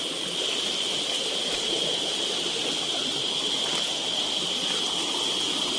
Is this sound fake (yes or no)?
no